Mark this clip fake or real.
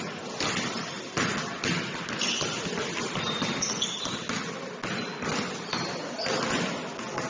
real